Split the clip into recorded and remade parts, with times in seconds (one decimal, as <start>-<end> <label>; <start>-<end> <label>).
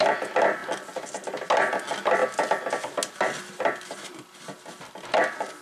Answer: 0.0-5.6 recorded